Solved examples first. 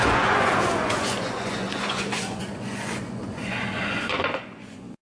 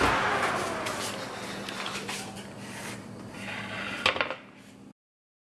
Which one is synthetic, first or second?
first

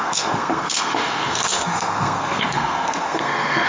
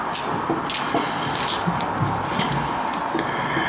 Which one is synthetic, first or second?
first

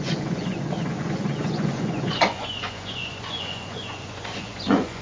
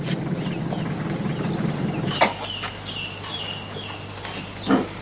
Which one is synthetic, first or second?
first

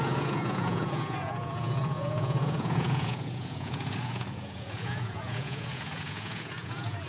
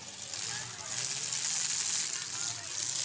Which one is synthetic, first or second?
first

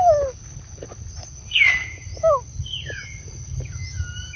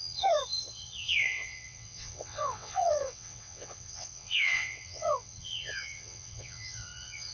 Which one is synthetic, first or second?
second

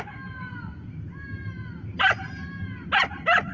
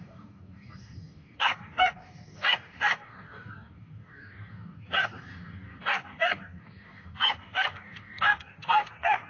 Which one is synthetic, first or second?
second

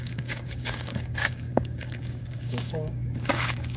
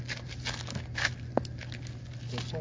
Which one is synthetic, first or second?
first